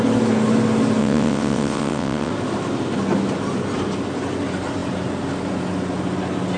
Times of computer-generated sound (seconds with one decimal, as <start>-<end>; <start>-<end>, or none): 1.0-2.3